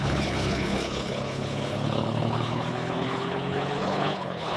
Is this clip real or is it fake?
fake